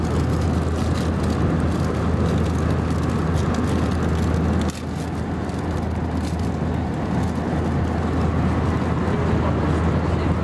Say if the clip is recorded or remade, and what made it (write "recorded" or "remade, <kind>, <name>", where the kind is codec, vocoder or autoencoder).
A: recorded